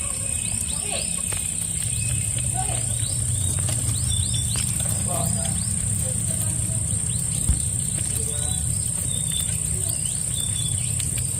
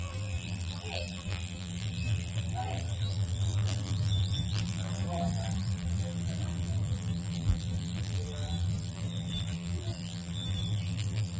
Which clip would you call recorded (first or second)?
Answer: first